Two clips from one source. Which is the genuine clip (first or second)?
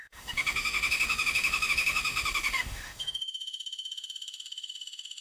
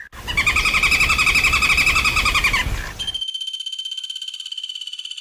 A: second